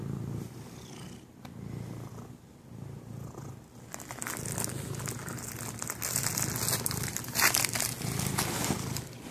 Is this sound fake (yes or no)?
no